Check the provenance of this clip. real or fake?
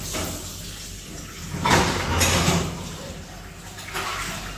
real